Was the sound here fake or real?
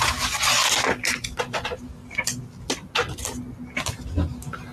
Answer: real